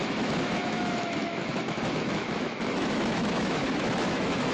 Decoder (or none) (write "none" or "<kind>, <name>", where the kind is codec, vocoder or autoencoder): autoencoder, DAC-VAE